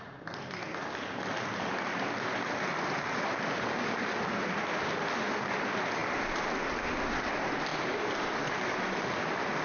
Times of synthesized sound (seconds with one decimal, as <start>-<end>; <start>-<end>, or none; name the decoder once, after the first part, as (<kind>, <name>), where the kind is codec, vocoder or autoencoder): none